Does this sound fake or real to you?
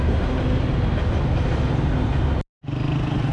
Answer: real